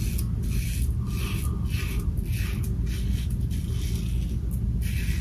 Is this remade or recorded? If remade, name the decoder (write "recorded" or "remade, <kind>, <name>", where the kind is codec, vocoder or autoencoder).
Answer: recorded